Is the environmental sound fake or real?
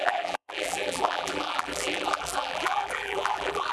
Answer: fake